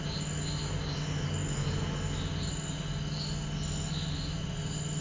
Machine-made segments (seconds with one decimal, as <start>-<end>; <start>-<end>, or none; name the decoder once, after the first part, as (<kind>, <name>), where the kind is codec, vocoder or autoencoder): none